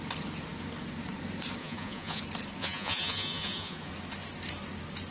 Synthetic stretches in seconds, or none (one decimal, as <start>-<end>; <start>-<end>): 1.6-2.2; 2.6-3.9